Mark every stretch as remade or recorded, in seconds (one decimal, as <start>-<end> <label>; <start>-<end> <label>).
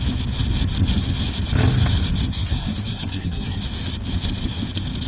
0.0-2.3 recorded; 2.3-3.6 remade; 3.6-5.1 recorded